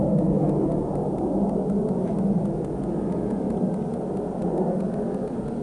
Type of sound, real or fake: real